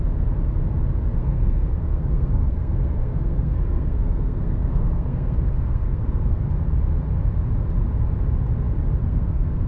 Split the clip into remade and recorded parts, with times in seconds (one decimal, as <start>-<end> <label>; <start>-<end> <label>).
0.0-1.2 recorded; 1.2-6.4 remade; 6.4-9.0 recorded; 9.0-9.7 remade